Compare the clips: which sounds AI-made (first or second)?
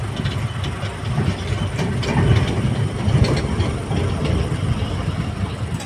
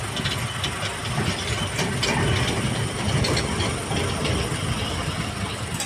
first